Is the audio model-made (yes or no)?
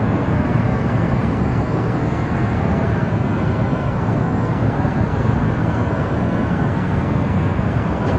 yes